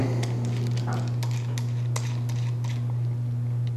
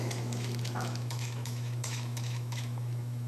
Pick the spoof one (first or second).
second